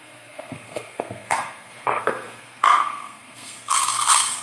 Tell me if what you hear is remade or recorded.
remade